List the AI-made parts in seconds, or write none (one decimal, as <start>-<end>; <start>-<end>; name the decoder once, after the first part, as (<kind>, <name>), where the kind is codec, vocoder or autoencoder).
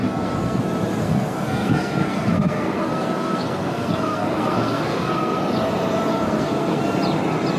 0.0-0.6 (codec, SNAC); 1.0-5.4; 6.1-6.8